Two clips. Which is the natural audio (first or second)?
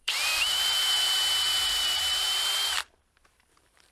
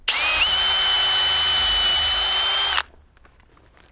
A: second